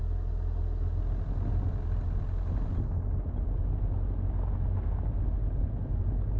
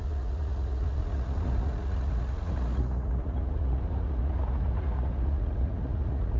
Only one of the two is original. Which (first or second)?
first